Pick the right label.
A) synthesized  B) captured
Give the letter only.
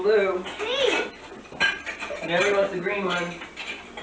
B